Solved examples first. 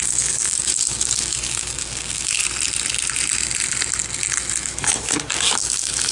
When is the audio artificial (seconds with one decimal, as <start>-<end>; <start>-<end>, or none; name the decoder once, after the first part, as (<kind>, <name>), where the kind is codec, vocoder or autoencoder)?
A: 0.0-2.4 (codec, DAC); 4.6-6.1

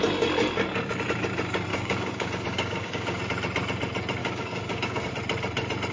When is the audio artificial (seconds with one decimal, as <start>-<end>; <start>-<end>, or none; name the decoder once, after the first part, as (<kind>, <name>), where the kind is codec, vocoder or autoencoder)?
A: 1.7-3.2 (codec, DAC); 4.2-5.1

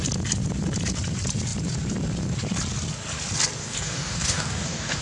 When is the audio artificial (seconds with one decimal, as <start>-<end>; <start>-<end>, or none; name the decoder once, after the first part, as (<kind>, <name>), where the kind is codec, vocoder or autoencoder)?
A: 3.6-5.0 (codec, DAC)